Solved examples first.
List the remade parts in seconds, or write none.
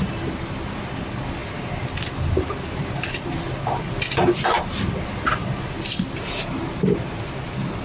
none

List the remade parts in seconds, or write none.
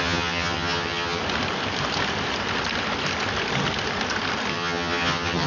0.0-1.2; 4.5-5.5